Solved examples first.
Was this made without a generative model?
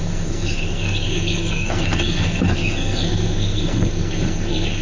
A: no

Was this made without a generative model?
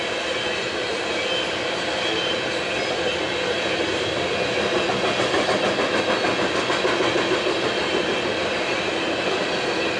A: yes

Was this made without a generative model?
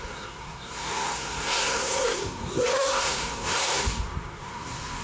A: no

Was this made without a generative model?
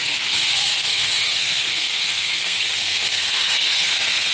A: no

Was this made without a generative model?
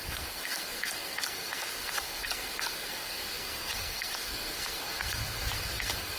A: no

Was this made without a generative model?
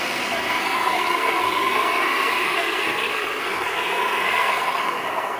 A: no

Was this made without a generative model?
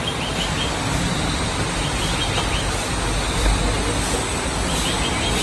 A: yes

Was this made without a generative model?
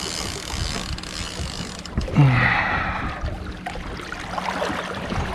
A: yes